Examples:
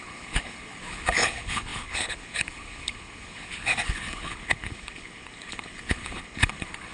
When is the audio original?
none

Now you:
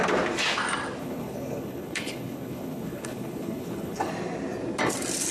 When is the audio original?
0.0-1.0; 4.1-5.3

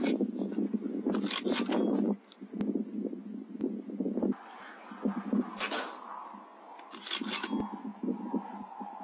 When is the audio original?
0.0-9.0